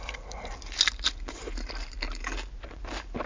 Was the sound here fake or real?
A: real